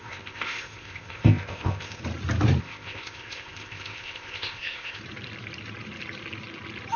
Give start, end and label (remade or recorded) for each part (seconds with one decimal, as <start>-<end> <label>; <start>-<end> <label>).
0.0-2.0 remade; 2.0-2.6 recorded; 2.6-5.0 remade; 5.0-7.0 recorded